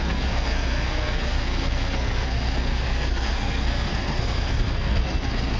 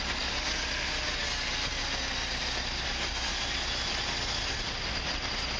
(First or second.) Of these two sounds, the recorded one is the second